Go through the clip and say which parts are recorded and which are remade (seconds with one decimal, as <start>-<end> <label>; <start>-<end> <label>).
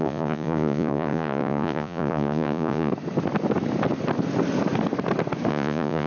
0.0-2.9 remade; 2.9-5.5 recorded; 5.5-6.1 remade